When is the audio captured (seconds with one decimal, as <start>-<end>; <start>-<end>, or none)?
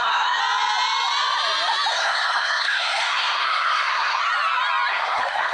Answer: 0.4-1.9; 4.2-4.9